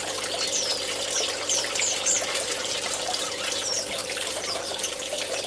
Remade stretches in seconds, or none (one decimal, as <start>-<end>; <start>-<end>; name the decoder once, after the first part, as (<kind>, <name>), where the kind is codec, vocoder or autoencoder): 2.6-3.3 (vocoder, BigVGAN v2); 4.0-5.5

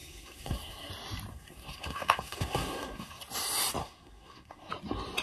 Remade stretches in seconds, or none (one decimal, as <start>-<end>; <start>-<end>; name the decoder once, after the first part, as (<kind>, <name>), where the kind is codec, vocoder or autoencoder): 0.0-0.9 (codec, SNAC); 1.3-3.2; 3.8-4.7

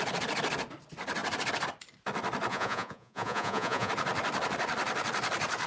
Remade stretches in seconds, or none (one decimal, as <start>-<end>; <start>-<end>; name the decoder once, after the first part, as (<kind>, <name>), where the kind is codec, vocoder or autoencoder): 2.5-3.9 (vocoder, Vocos)

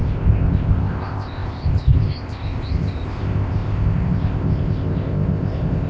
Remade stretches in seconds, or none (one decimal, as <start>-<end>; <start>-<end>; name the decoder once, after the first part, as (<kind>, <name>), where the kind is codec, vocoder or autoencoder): 0.0-5.9 (codec, ZipCodec)

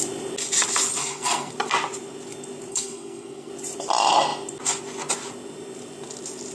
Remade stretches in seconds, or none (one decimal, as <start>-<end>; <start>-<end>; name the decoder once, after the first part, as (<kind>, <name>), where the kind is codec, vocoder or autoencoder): 1.0-1.5 (codec, SNAC); 2.7-3.5